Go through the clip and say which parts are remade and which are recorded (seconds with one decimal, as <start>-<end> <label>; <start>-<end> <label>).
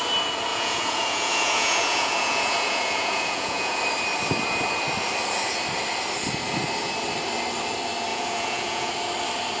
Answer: 0.0-0.5 recorded; 0.5-3.8 remade; 3.8-8.1 recorded; 8.1-8.9 remade; 8.9-9.6 recorded